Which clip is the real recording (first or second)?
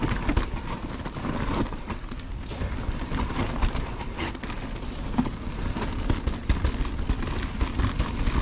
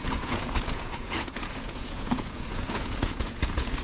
first